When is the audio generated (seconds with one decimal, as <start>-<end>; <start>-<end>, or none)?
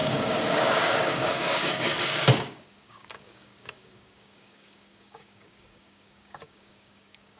0.0-7.4